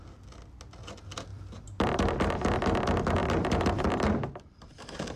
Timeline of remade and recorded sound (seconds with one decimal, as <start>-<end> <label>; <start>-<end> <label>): 0.0-1.3 recorded; 1.3-1.9 remade; 1.9-3.2 recorded; 3.2-3.9 remade; 3.9-5.2 recorded